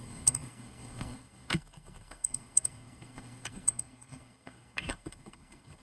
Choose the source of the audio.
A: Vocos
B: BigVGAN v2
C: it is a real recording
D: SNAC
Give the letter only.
D